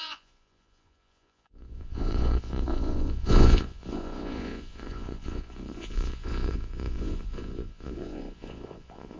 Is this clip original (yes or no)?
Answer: no